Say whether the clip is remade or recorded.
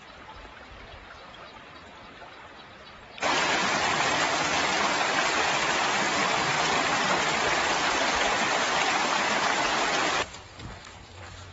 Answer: recorded